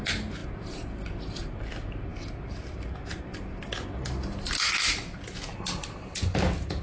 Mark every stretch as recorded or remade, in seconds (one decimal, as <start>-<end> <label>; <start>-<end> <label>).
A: 0.0-6.8 recorded